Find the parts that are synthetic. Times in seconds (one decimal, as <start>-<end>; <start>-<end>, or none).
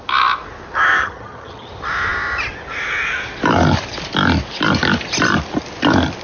1.0-1.7